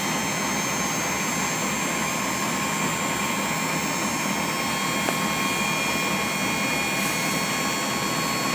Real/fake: real